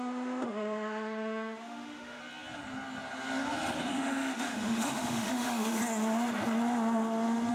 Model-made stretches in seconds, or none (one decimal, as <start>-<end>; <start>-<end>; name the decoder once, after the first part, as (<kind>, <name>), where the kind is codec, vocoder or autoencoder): 0.0-2.2 (autoencoder, DAC-VAE); 3.9-5.8